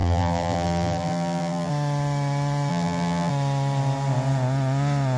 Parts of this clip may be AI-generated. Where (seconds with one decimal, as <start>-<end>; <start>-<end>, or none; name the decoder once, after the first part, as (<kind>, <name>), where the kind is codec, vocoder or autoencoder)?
0.0-1.7 (vocoder, BigVGAN v2); 2.7-3.3